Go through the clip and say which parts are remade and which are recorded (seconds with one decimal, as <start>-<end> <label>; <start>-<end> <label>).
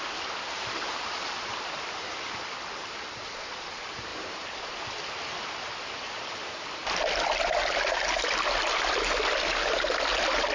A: 0.0-10.5 recorded